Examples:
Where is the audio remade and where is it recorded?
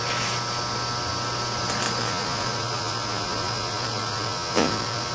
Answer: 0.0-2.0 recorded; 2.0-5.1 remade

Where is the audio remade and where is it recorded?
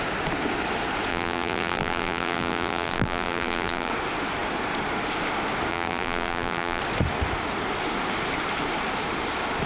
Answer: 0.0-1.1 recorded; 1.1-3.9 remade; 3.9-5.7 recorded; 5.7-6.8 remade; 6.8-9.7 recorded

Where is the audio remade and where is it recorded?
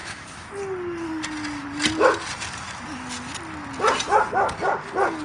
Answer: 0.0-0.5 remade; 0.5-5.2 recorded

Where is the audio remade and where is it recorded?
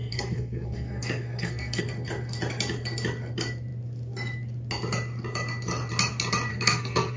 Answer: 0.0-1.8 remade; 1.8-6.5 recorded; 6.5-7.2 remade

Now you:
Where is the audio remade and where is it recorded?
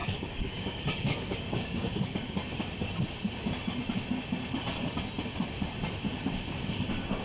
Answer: 0.0-2.4 remade; 2.4-6.7 recorded; 6.7-7.2 remade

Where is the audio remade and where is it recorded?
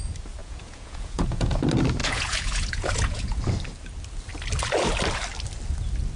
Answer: 0.0-0.4 recorded; 0.4-1.6 remade; 1.6-2.0 recorded; 2.0-3.4 remade; 3.4-6.2 recorded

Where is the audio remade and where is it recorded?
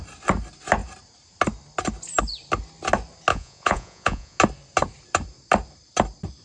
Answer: 0.0-3.3 recorded; 3.3-4.4 remade; 4.4-6.4 recorded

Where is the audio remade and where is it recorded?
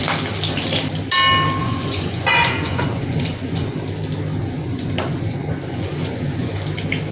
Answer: 0.0-1.6 recorded; 1.6-3.8 remade; 3.8-4.4 recorded; 4.4-6.5 remade; 6.5-7.1 recorded